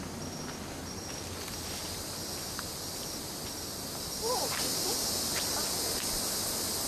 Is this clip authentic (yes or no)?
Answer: yes